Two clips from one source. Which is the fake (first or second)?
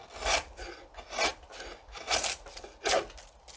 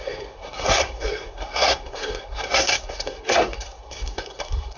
second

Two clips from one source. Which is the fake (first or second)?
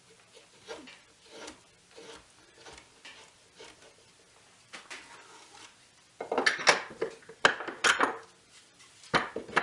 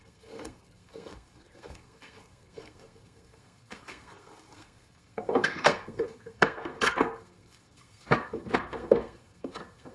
second